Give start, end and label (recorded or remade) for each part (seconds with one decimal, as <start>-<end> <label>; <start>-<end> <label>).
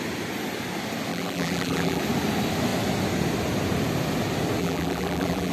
0.0-1.1 recorded; 1.1-2.0 remade; 2.0-4.6 recorded; 4.6-5.5 remade